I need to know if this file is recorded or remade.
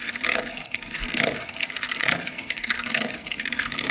remade